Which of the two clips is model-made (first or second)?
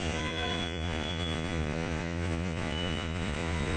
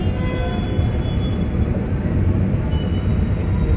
first